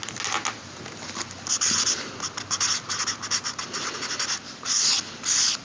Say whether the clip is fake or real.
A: real